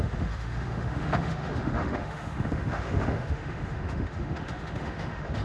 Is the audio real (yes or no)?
no